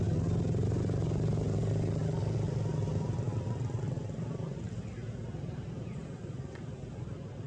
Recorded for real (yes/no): yes